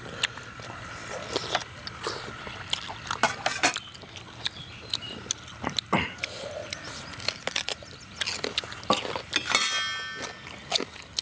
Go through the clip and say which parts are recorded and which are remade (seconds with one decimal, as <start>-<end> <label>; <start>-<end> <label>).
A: 0.0-11.2 recorded